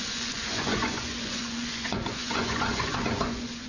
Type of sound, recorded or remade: remade